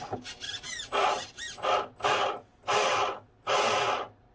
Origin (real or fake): real